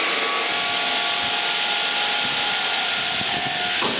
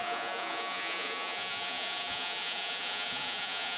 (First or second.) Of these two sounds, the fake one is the second